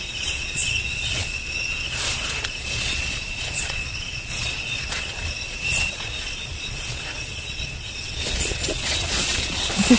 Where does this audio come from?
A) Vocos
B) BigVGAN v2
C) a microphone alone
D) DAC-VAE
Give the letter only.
A